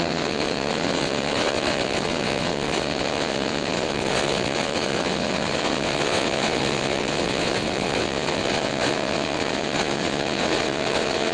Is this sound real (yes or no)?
no